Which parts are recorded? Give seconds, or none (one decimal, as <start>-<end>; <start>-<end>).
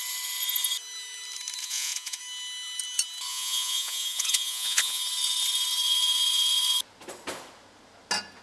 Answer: 0.0-1.6; 2.2-3.3; 5.0-8.4